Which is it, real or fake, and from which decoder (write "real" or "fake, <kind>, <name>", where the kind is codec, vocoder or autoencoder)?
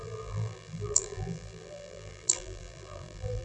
fake, vocoder, BigVGAN v2